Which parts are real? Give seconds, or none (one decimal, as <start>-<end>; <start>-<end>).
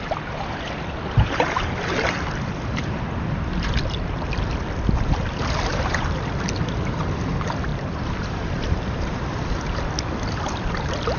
0.0-5.7; 6.2-7.7; 9.2-11.2